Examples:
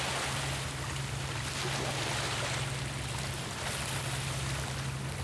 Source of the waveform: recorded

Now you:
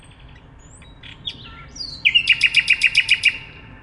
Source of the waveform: recorded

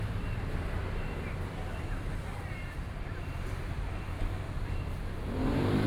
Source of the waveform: remade